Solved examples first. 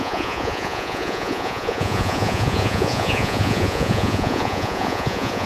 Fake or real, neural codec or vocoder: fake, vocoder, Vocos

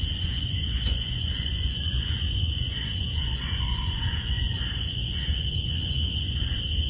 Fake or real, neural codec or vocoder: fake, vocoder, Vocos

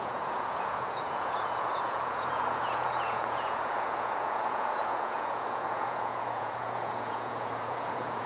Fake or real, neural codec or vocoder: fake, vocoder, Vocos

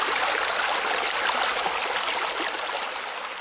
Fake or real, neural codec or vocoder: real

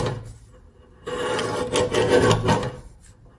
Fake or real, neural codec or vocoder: real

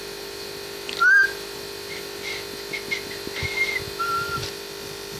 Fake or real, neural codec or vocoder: real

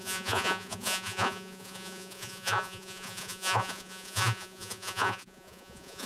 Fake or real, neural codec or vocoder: fake, vocoder, Vocos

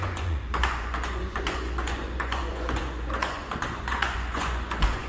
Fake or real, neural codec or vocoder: fake, vocoder, Vocos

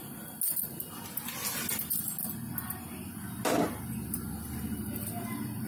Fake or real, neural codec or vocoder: real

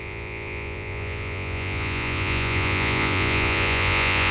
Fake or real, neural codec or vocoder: fake, vocoder, Vocos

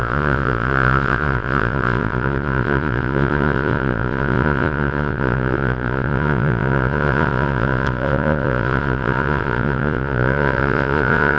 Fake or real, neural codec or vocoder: fake, vocoder, Vocos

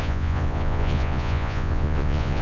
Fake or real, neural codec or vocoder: fake, vocoder, Vocos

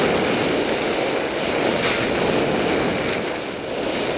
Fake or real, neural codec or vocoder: real